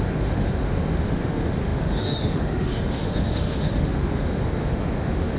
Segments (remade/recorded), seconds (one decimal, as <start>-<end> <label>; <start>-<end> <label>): 0.0-5.4 remade